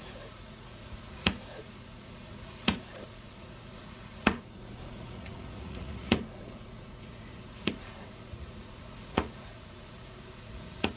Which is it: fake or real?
fake